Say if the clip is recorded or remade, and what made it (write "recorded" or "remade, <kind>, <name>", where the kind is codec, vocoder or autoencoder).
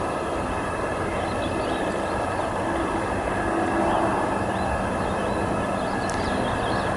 recorded